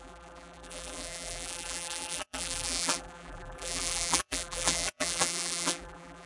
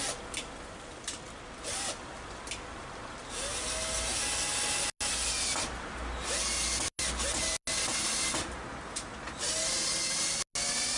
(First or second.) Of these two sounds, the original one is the second